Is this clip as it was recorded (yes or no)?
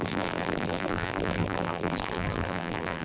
no